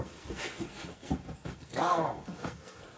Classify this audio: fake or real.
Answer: fake